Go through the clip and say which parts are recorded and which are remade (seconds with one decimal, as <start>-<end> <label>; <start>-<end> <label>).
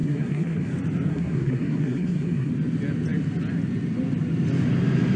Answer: 0.0-0.7 remade; 0.7-1.1 recorded; 1.1-2.5 remade; 2.5-5.2 recorded